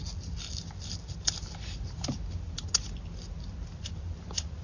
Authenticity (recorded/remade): recorded